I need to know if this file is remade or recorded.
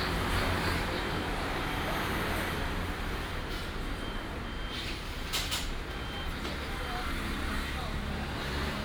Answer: remade